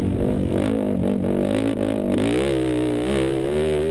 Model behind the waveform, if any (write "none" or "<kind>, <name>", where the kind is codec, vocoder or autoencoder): none